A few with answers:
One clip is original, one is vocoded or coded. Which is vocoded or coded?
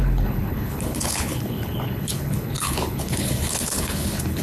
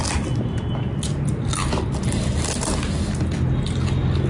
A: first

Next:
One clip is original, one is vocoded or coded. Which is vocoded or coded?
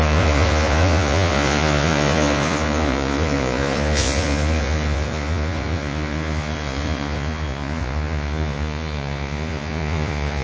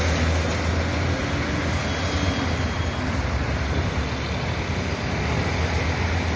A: first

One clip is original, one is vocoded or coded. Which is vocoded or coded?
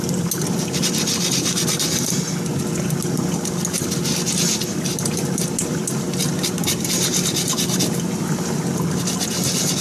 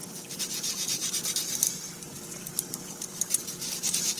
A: second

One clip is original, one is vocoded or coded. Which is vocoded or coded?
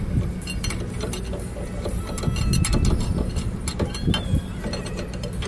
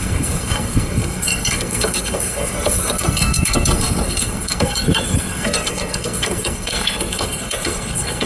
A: second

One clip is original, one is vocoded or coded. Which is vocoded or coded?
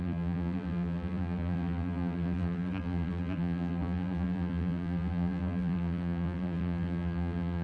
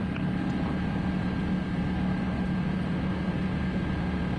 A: first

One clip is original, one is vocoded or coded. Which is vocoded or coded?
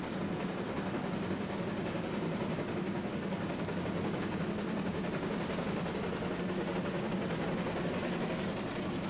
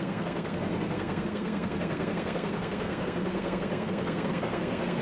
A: second